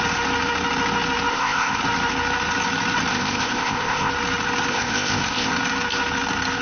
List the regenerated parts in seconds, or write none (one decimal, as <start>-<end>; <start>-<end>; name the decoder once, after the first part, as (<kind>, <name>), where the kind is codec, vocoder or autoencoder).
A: 1.3-1.8 (codec, ZipCodec); 3.1-4.1; 4.7-5.5